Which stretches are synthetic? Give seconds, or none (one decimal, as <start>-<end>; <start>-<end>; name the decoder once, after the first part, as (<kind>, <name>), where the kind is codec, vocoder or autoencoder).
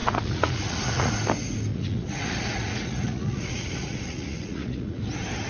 0.0-1.1 (vocoder, Vocos); 1.7-5.0